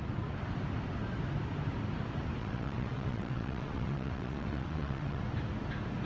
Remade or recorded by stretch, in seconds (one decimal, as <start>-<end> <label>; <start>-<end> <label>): 0.0-2.4 recorded; 2.4-5.2 remade; 5.2-6.1 recorded